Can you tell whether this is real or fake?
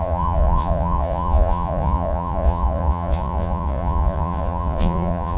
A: fake